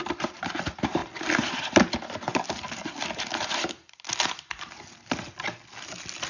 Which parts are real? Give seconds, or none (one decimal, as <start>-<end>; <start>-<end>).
1.0-1.9; 2.3-6.3